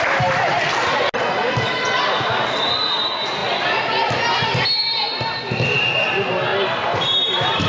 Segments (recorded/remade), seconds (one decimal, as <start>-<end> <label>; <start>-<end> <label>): 0.0-0.5 recorded; 0.5-1.0 remade; 1.0-6.5 recorded; 6.5-7.7 remade